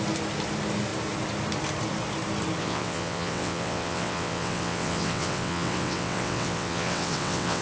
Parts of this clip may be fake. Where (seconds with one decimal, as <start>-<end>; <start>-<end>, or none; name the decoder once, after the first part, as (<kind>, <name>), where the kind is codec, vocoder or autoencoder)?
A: 2.6-7.6 (vocoder, WaveNeXt)